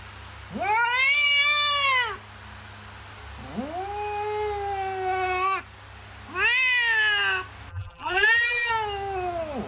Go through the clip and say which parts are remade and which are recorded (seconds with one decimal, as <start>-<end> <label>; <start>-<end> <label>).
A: 0.0-7.7 recorded; 7.7-8.7 remade; 8.7-9.7 recorded